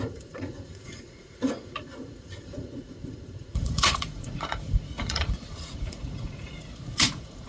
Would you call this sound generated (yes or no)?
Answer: yes